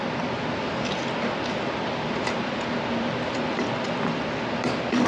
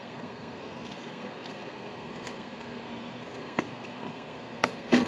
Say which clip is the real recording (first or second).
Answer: first